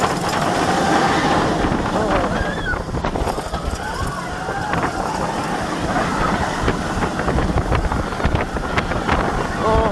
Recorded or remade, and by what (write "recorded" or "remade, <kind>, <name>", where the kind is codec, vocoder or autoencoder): recorded